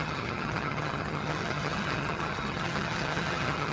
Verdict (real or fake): fake